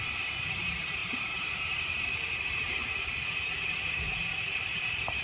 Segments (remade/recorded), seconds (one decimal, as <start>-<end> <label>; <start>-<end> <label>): 0.0-2.8 remade; 2.8-3.7 recorded; 3.7-5.2 remade